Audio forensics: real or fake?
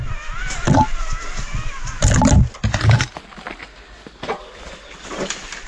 real